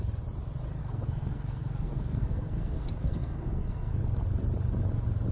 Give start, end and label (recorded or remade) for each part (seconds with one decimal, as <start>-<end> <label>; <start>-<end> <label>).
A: 0.0-0.8 recorded; 0.8-4.0 remade; 4.0-5.3 recorded